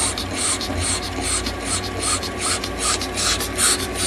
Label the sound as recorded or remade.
recorded